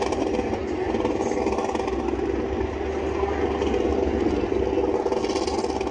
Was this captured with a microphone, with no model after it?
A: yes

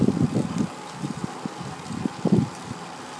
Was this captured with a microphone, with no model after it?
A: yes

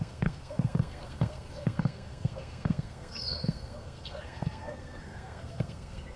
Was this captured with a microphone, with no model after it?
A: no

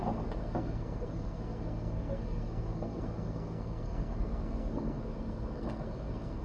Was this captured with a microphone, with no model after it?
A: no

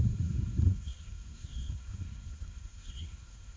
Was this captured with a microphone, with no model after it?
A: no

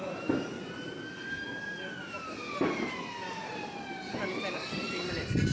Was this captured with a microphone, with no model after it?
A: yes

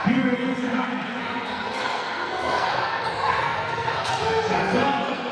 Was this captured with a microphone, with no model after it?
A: no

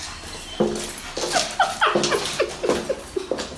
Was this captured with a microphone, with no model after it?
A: yes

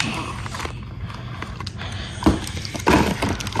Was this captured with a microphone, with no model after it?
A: yes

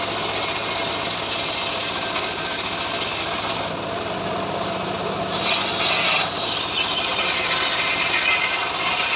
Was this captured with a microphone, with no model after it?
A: yes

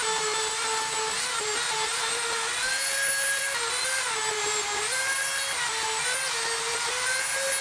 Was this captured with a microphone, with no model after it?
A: yes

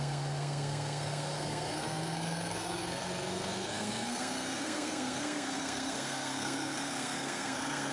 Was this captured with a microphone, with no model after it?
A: no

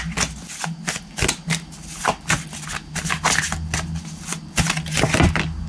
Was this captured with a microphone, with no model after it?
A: yes